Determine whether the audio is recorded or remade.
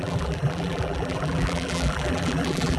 remade